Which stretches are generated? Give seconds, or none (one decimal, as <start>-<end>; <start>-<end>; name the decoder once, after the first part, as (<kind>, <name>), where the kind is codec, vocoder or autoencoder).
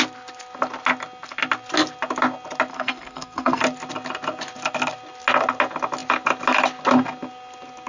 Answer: 2.7-3.6 (codec, SNAC)